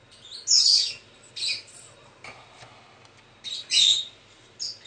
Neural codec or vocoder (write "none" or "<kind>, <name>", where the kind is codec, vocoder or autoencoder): none